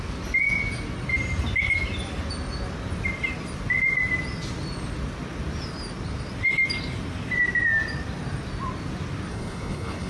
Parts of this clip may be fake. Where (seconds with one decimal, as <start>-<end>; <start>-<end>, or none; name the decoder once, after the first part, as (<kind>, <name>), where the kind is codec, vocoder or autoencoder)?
9.3-10.1 (codec, HILCodec)